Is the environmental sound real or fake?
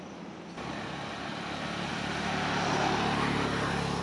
real